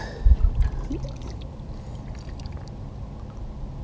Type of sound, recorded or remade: recorded